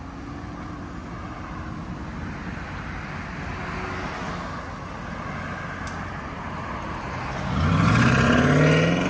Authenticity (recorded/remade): recorded